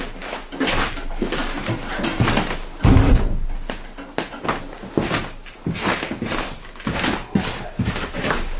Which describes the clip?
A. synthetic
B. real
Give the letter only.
B